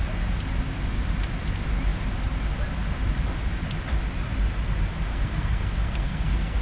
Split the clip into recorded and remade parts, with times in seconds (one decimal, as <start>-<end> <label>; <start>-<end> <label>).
0.0-5.1 recorded; 5.1-6.6 remade

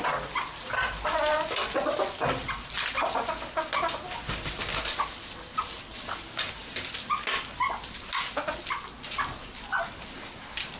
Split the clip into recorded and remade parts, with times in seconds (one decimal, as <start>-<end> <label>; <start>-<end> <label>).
0.0-10.8 recorded

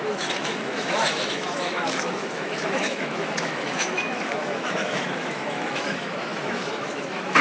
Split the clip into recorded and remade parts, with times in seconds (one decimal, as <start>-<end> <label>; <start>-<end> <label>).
0.0-7.4 remade

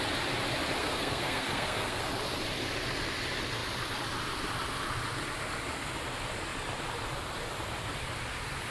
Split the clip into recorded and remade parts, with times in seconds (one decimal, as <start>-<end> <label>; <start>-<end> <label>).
0.0-0.8 recorded; 0.8-2.0 remade; 2.0-8.7 recorded